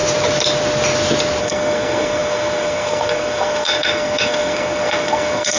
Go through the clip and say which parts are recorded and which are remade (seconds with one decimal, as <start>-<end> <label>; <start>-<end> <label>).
0.0-1.4 recorded; 1.4-5.6 remade